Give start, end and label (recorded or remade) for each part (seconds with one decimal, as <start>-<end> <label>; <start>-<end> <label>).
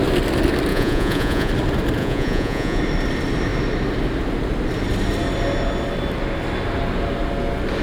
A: 0.0-0.7 recorded; 0.7-1.5 remade; 1.5-2.0 recorded; 2.0-2.8 remade; 2.8-7.8 recorded